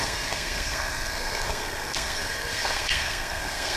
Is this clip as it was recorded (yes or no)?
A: no